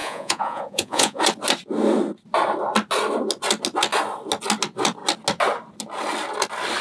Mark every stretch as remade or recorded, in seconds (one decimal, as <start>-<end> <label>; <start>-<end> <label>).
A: 0.0-1.2 remade; 1.2-6.8 recorded